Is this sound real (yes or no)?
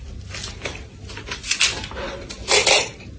yes